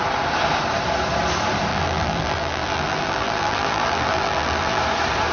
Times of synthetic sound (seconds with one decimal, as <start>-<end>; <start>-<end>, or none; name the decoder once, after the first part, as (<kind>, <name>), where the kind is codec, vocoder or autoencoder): 1.7-4.8 (vocoder, BigVGAN v2)